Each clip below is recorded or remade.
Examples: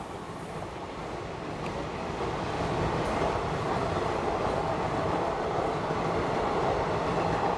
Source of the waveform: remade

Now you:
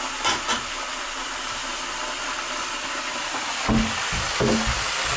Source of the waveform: recorded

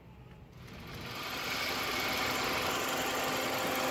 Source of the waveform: recorded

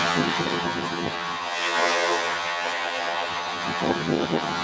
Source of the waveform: remade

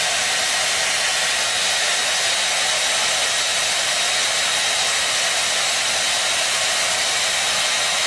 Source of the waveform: recorded